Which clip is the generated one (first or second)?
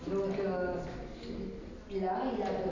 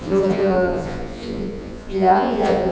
second